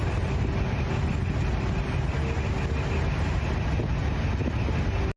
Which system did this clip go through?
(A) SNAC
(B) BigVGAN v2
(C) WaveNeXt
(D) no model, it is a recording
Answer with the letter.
D